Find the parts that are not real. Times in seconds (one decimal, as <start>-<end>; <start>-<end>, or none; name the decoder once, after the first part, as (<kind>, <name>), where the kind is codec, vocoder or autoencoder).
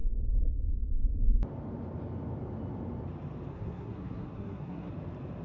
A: 3.5-4.9 (codec, SNAC)